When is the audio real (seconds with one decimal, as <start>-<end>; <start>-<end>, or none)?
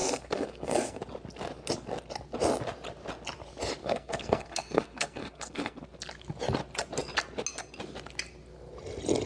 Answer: 1.0-3.8; 5.8-9.3